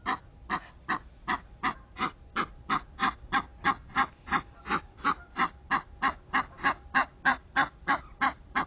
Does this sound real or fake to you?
fake